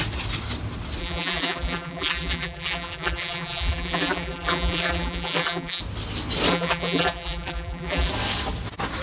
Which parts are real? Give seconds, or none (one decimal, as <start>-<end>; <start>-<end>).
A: 0.0-1.0; 5.8-6.5; 8.1-9.0